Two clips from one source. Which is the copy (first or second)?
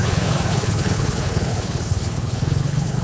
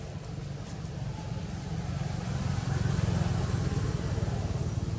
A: first